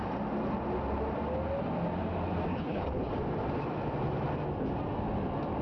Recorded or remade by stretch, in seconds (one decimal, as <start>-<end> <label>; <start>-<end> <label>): 0.0-2.5 recorded; 2.5-3.1 remade; 3.1-5.6 recorded